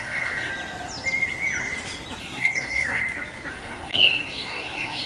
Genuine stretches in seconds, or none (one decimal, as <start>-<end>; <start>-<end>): 0.5-2.2; 3.0-3.5